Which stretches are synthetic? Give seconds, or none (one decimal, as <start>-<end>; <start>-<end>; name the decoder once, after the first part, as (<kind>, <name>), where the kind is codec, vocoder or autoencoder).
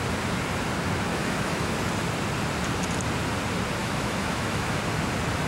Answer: 1.1-1.7 (autoencoder, DAC-VAE); 3.8-4.8